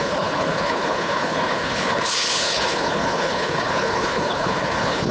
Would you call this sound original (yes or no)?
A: no